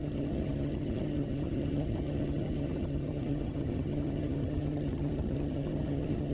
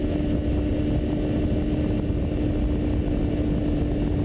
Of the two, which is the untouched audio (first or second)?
second